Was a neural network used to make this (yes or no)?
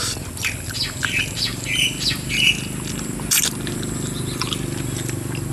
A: no